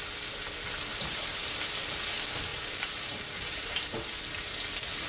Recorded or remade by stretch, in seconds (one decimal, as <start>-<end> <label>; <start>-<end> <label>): 0.0-0.9 recorded; 0.9-1.6 remade; 1.6-2.5 recorded; 2.5-4.2 remade; 4.2-5.1 recorded